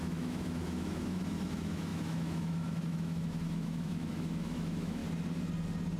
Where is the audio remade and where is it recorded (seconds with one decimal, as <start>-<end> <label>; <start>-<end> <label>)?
0.0-5.0 remade; 5.0-6.0 recorded